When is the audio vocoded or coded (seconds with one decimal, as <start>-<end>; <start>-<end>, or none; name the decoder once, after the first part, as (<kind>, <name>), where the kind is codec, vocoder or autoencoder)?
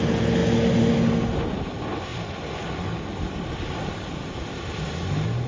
none